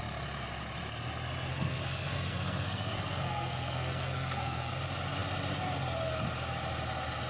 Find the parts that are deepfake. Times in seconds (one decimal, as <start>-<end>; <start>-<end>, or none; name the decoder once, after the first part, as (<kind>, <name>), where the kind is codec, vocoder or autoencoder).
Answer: 1.5-4.7 (codec, SNAC)